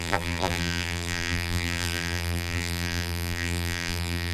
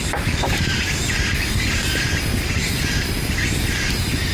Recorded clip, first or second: second